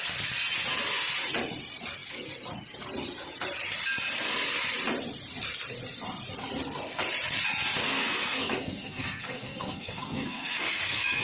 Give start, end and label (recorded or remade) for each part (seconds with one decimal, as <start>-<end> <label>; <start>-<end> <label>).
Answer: 0.0-7.8 recorded; 7.8-11.2 remade